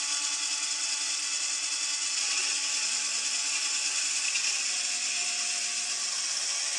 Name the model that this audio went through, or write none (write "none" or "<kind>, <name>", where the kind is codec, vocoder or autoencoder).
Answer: none